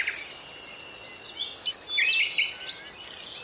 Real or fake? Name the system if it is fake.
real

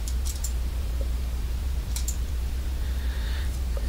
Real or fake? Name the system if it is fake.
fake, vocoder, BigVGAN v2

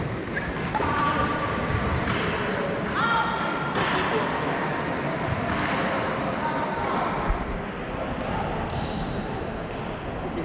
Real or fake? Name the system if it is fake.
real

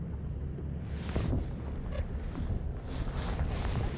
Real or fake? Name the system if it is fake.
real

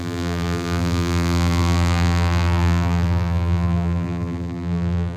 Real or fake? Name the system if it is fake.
fake, vocoder, BigVGAN v2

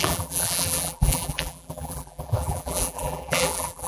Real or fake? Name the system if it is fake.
fake, vocoder, BigVGAN v2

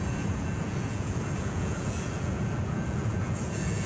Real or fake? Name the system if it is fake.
fake, vocoder, Vocos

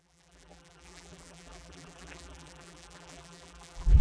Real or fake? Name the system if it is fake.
fake, vocoder, BigVGAN v2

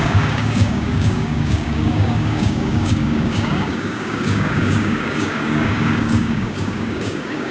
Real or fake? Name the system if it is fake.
fake, codec, DAC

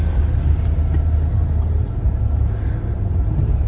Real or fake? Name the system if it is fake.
real